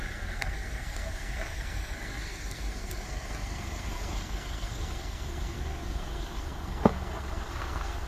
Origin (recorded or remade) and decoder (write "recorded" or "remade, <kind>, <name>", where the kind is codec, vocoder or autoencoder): remade, codec, SNAC